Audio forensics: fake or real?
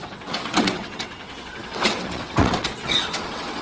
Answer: fake